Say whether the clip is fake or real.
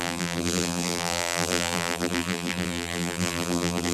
fake